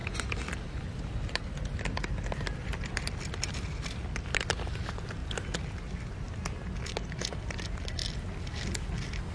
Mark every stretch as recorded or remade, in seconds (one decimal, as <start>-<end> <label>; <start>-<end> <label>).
0.0-4.7 remade; 4.7-9.3 recorded